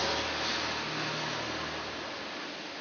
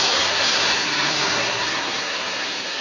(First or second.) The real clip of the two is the first